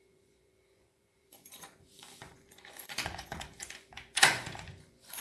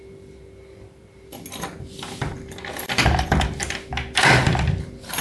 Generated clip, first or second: first